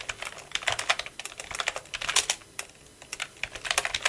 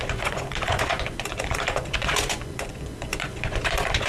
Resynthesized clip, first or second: second